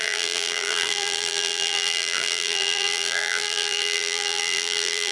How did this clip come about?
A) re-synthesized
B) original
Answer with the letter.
A